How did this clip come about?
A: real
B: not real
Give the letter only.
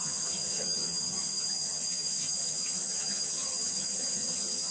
B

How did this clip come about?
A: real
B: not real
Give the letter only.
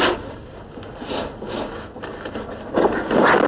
A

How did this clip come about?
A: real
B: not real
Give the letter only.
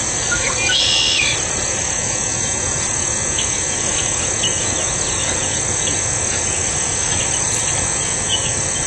A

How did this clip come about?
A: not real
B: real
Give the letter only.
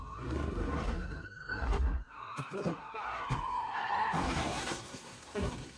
A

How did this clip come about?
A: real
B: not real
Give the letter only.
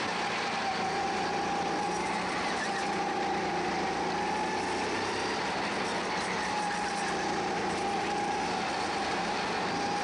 A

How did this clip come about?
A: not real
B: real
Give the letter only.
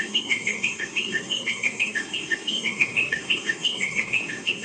A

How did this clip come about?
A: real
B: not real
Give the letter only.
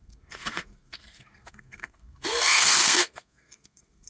B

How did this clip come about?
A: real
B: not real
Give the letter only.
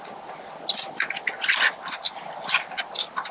A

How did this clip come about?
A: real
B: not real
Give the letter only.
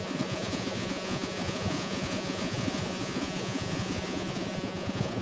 B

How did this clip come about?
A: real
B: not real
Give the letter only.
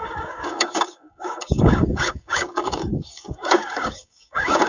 B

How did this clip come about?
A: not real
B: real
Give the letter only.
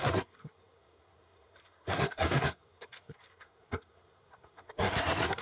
A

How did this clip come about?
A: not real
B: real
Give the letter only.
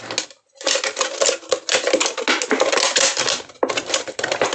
B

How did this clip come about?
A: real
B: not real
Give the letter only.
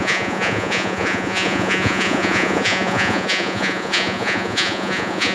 B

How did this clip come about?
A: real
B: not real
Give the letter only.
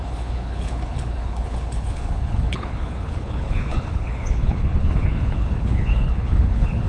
B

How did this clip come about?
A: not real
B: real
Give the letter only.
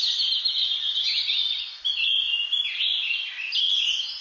B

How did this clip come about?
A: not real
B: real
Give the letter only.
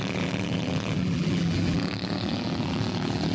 A